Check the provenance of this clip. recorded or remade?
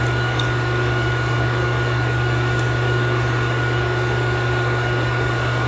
remade